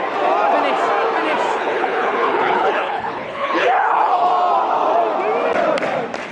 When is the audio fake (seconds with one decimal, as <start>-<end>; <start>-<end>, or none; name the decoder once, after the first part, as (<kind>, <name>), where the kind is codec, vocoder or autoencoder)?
1.5-4.3 (codec, HILCodec)